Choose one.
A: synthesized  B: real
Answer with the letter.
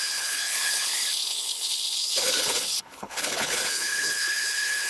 A